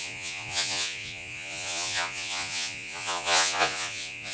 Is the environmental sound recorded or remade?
remade